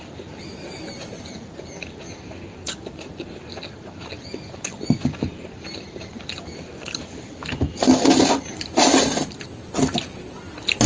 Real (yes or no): yes